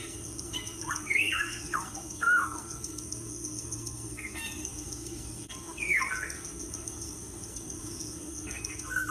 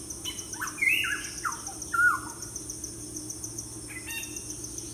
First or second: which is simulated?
first